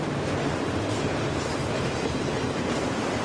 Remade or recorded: remade